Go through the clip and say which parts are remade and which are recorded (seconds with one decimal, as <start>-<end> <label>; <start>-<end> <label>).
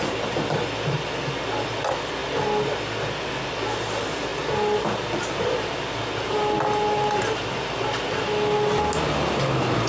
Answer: 0.0-9.9 recorded